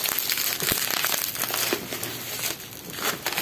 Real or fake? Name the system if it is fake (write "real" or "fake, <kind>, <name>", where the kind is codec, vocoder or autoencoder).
real